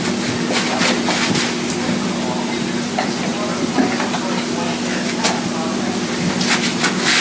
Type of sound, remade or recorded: recorded